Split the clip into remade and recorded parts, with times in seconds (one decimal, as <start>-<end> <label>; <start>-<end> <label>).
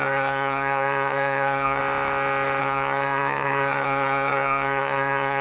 0.0-1.8 remade; 1.8-2.6 recorded; 2.6-5.4 remade